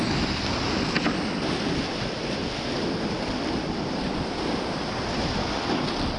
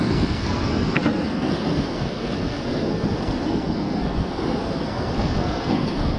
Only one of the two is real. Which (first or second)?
first